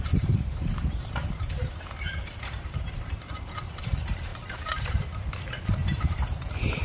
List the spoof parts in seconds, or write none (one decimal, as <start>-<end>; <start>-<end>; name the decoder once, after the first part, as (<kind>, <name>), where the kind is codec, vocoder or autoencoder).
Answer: 0.0-6.8 (vocoder, BigVGAN v2)